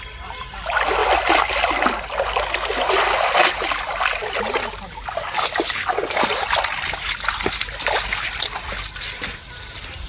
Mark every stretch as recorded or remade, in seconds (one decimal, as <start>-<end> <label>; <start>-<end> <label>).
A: 0.0-10.1 recorded